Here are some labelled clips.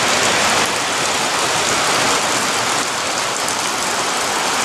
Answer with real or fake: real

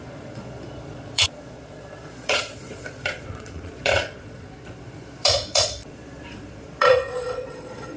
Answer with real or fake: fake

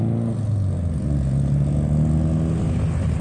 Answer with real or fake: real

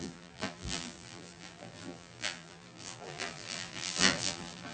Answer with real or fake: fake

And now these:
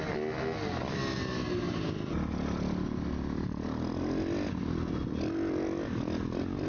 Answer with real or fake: real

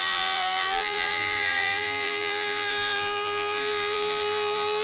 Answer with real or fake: fake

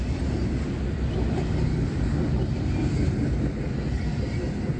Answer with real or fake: real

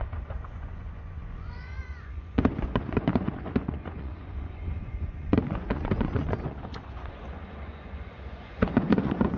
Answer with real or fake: fake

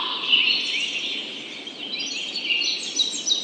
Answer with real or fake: real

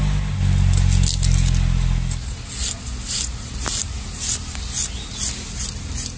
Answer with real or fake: real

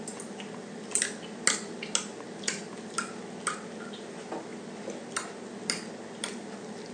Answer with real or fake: real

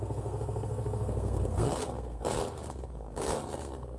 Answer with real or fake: fake